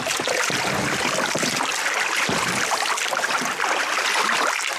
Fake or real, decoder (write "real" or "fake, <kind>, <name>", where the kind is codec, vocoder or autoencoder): real